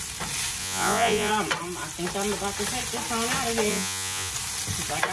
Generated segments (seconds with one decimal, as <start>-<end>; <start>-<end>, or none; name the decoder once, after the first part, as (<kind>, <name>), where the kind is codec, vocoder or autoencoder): 0.6-1.3 (vocoder, Vocos); 3.7-4.3